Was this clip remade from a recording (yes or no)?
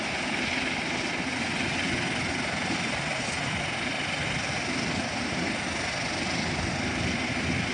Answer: no